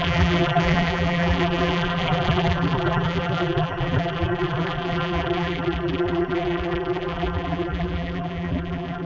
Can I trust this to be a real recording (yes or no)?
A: no